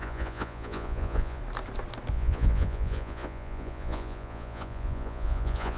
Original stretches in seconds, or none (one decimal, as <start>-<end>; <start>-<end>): 1.4-2.1